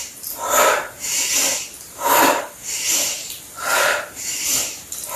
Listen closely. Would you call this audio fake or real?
real